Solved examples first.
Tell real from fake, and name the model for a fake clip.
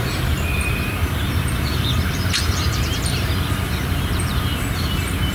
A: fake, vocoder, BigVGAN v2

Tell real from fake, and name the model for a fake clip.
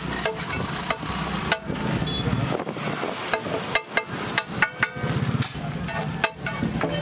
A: real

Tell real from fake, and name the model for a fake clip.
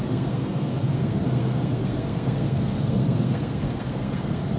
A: fake, codec, SNAC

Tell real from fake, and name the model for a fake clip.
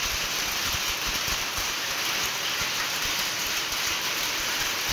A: real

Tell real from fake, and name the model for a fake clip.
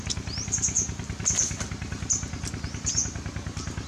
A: real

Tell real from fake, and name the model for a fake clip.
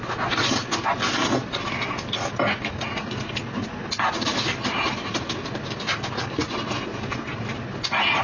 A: real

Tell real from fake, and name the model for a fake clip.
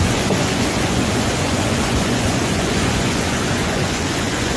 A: fake, vocoder, Vocos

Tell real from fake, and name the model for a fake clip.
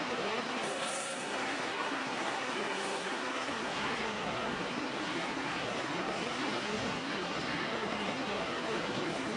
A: fake, codec, SNAC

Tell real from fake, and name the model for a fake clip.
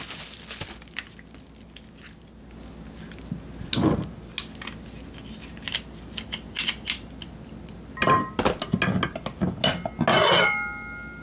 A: real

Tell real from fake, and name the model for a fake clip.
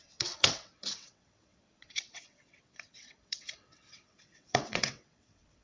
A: fake, vocoder, WaveNeXt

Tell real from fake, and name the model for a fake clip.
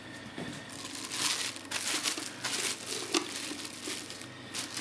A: real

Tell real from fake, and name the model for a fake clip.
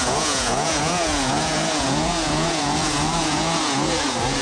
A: fake, vocoder, Vocos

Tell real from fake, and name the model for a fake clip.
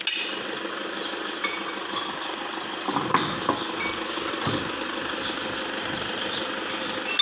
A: real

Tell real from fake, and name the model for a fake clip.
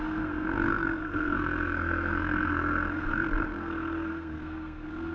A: fake, codec, SNAC